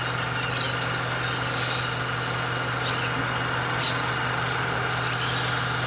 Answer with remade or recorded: recorded